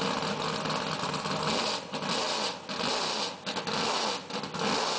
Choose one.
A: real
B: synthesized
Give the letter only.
A